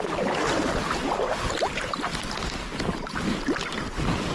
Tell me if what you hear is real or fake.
real